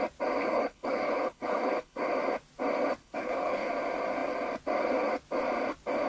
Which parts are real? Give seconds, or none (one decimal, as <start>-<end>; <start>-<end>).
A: 0.0-0.4; 2.0-3.0; 3.7-6.1